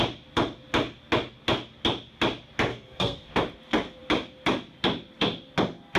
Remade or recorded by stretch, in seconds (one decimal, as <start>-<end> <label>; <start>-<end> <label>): 0.0-2.7 recorded; 2.7-3.3 remade; 3.3-6.0 recorded